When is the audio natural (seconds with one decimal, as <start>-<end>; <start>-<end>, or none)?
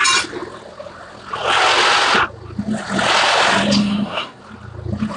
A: 0.0-3.8; 4.4-5.2